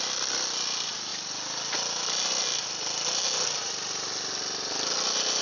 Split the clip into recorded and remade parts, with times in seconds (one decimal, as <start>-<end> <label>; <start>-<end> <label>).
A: 0.0-5.4 recorded